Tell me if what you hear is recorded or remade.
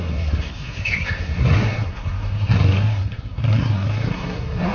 remade